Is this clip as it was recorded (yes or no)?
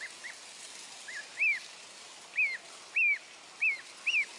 yes